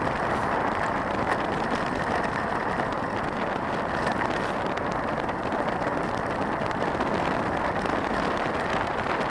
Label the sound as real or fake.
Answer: real